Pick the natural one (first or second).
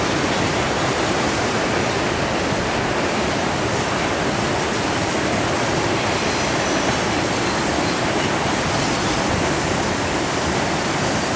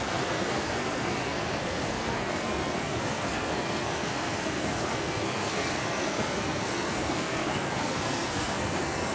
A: first